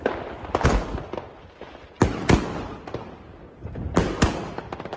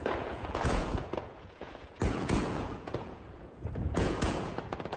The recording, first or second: first